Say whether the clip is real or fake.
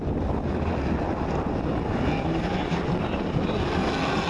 real